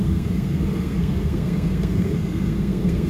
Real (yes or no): no